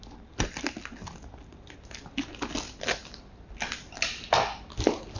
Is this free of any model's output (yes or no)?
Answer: yes